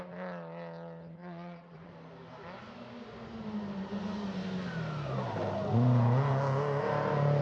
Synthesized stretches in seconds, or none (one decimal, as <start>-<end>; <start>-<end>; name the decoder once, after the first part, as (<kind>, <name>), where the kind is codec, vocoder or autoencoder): 1.2-1.9 (vocoder, WaveNeXt)